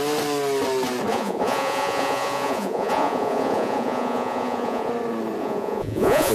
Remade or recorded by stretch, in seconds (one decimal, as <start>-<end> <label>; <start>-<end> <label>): 0.0-1.1 recorded; 1.1-4.9 remade; 4.9-5.4 recorded; 5.4-6.3 remade